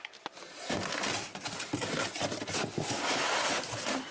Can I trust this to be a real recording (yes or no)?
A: yes